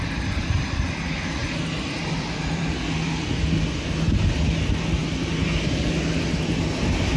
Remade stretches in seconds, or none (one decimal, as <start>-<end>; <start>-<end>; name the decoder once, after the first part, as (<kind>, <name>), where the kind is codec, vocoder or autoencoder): none